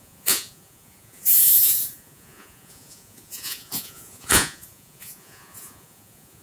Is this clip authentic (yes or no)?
no